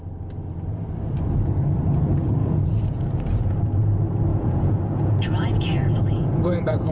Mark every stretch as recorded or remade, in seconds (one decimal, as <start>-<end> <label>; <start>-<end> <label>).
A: 0.0-2.4 recorded; 2.4-3.6 remade; 3.6-4.3 recorded; 4.3-6.9 remade